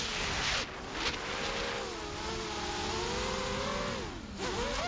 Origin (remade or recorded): recorded